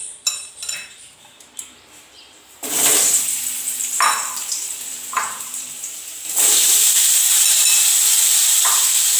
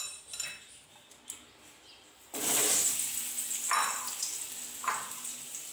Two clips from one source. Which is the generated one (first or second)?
first